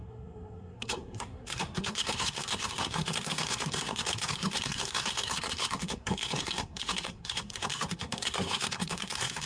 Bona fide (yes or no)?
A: no